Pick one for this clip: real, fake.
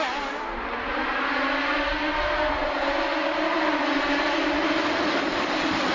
real